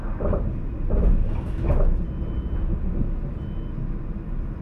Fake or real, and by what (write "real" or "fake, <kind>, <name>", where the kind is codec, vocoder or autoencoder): real